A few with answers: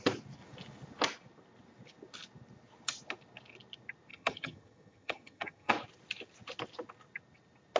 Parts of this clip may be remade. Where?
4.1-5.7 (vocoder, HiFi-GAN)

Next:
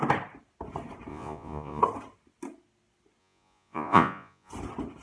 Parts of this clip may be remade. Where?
1.1-1.8 (vocoder, Vocos); 3.2-4.5

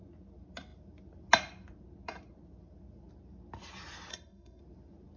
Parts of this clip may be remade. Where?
4.1-4.6 (codec, SNAC)

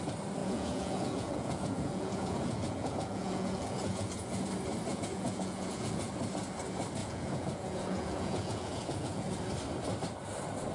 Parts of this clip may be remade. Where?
0.4-4.4 (vocoder, Vocos); 4.9-6.1; 7.0-9.3